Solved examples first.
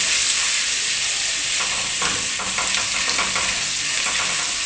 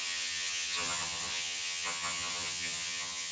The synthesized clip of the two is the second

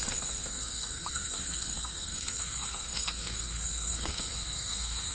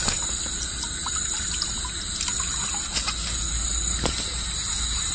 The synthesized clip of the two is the first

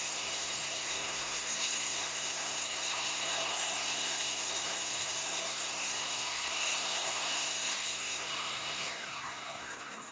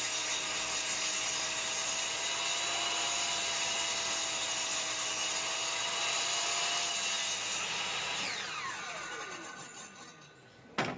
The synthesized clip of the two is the first